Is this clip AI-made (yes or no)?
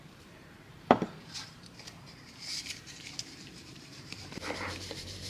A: yes